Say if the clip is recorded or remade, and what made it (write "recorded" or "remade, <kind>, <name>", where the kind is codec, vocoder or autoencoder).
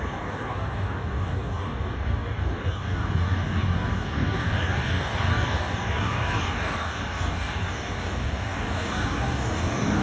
remade, codec, DAC